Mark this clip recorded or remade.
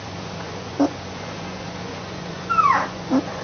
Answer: remade